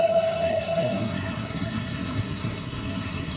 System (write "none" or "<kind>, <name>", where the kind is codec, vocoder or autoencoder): codec, SNAC